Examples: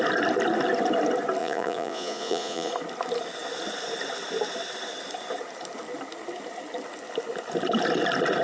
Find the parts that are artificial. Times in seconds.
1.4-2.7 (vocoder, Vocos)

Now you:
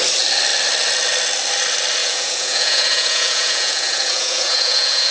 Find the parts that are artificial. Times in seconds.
2.0-5.1 (vocoder, Vocos)

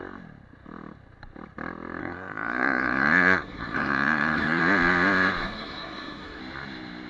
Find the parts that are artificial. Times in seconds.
2.0-4.6 (codec, SNAC); 5.4-6.4